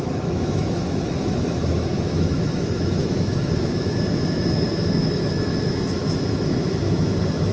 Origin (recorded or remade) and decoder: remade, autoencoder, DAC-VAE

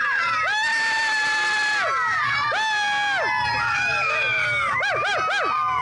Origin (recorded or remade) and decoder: recorded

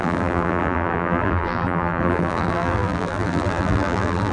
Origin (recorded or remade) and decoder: remade, vocoder, BigVGAN v2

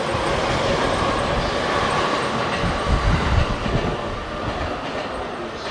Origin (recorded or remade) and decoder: recorded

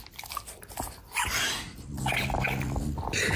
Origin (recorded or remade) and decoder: recorded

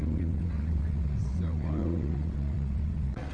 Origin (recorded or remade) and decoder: remade, vocoder, WaveNeXt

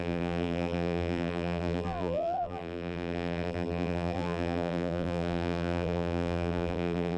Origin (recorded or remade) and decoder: remade, vocoder, BigVGAN v2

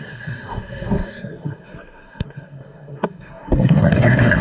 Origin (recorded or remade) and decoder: remade, codec, SNAC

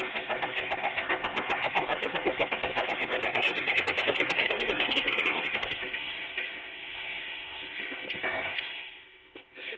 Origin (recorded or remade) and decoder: remade, codec, SNAC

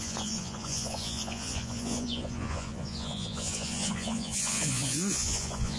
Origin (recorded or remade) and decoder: remade, vocoder, Vocos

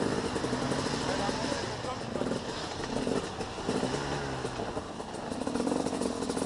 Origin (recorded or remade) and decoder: recorded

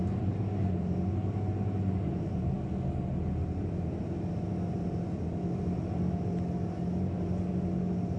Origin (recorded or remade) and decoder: recorded